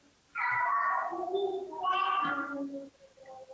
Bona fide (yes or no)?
yes